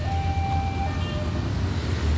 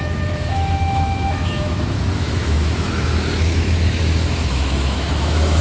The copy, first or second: second